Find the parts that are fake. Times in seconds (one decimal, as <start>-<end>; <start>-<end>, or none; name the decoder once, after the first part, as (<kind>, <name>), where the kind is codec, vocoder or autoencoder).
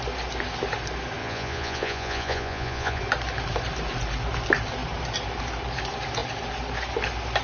1.2-3.0 (vocoder, Vocos)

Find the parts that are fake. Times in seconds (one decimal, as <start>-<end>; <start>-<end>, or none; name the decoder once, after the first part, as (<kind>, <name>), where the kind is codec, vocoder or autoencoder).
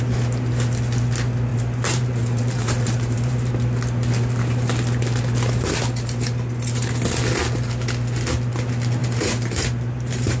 1.5-3.5 (vocoder, BigVGAN v2); 9.0-10.4